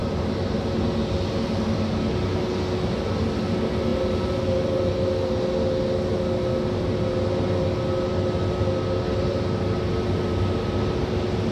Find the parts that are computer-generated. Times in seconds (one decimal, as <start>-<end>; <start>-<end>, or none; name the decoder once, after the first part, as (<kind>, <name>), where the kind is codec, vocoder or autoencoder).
0.0-0.6 (vocoder, BigVGAN v2)